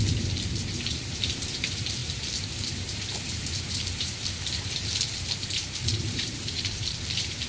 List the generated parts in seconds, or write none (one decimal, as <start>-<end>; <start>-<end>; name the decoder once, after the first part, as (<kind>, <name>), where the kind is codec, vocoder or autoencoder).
0.0-7.5 (vocoder, BigVGAN v2)